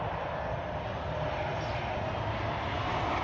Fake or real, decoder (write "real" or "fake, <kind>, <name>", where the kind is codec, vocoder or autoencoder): real